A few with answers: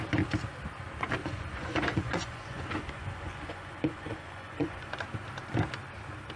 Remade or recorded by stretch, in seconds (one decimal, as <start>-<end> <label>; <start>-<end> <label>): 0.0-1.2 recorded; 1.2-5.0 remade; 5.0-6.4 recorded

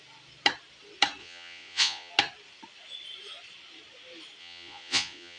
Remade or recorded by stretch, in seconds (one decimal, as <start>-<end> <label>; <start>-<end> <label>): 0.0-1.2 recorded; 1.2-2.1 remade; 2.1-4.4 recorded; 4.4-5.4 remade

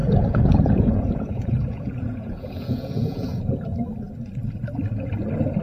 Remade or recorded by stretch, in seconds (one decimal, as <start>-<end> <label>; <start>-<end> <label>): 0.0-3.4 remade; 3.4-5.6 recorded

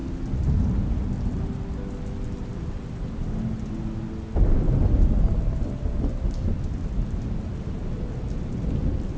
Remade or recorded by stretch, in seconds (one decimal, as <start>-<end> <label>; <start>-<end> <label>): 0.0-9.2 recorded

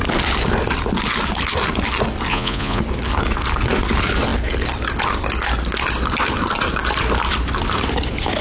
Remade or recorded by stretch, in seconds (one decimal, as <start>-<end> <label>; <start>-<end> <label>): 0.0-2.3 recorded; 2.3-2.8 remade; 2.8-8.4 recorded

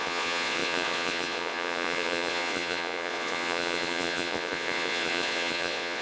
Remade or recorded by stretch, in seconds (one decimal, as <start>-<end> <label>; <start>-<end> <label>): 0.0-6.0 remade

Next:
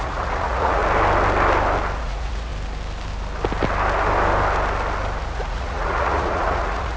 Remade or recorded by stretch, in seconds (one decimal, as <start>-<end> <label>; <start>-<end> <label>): 0.0-0.8 remade; 0.8-2.0 recorded; 2.0-2.5 remade; 2.5-5.2 recorded; 5.2-7.0 remade